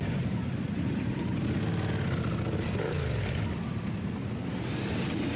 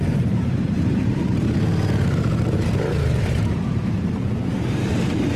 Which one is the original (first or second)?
first